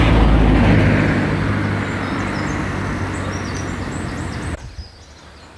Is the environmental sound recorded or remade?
recorded